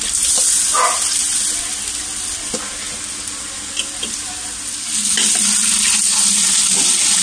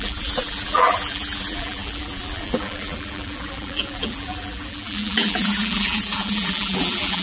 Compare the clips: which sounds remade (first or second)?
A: second